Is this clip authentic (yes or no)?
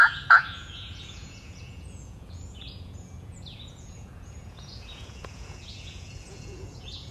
no